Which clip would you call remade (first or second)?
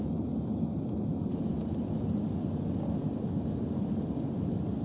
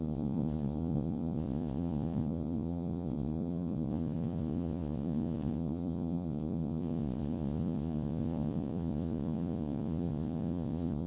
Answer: second